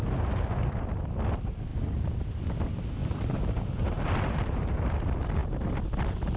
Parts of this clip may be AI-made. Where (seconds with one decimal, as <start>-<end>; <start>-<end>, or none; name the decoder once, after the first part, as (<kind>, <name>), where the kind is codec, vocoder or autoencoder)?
3.0-4.6 (vocoder, BigVGAN v2); 5.4-6.4